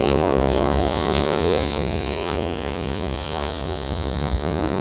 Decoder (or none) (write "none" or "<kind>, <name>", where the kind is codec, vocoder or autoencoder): vocoder, Vocos